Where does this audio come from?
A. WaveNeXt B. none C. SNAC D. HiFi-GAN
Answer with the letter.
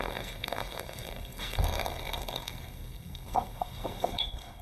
C